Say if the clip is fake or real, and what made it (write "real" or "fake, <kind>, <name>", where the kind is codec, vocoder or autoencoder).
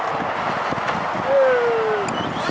real